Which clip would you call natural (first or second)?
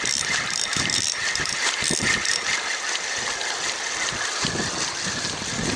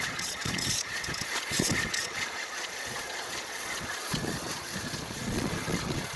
first